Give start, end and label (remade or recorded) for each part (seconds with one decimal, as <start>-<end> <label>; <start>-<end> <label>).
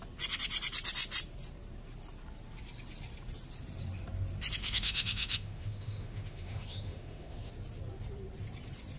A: 0.0-4.6 recorded; 4.6-7.5 remade; 7.5-9.0 recorded